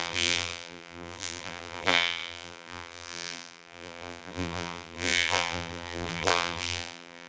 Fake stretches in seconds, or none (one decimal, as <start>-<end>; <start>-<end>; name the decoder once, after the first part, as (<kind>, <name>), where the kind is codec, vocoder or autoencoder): 0.0-7.3 (vocoder, BigVGAN v2)